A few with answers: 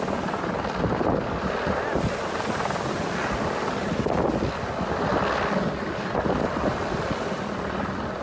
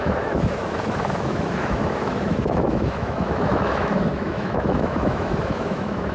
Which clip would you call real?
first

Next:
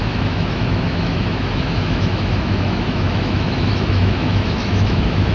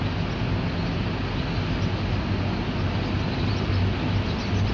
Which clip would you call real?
second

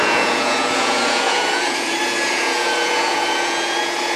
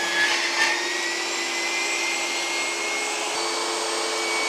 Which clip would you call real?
second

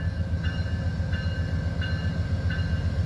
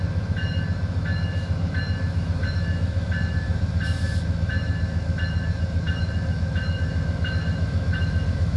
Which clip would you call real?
first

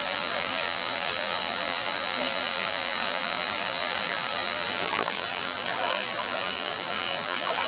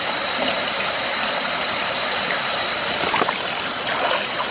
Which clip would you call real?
second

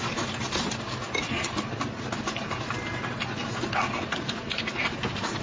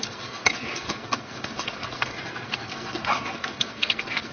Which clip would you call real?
first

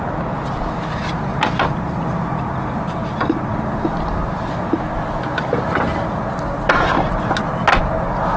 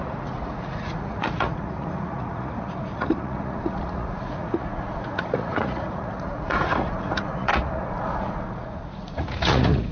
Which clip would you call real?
first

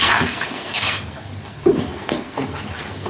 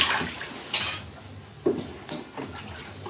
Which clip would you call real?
second